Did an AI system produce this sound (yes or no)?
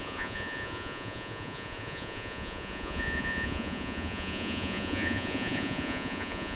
yes